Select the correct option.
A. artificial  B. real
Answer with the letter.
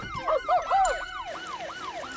B